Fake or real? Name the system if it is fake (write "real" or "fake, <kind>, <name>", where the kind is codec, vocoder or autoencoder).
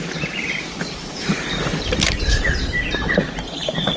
fake, vocoder, BigVGAN v2